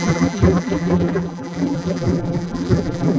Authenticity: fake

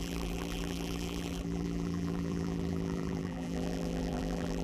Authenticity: fake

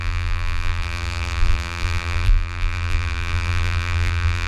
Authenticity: fake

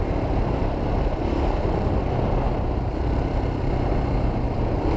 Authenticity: real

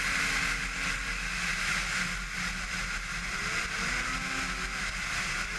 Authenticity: real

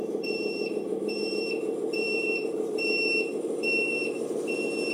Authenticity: fake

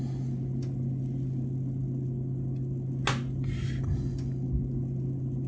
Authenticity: real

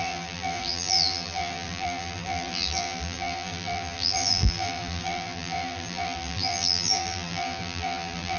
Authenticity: fake